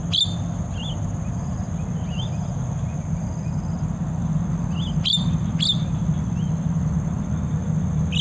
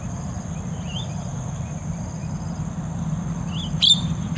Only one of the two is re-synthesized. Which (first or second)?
second